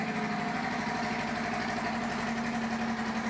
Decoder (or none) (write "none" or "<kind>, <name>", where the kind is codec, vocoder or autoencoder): none